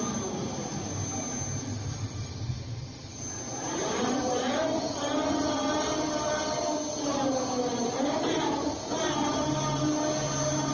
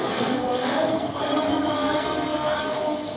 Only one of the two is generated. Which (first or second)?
second